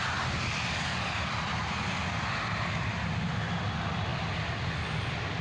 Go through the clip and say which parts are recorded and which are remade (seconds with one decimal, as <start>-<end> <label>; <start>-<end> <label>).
0.0-5.4 recorded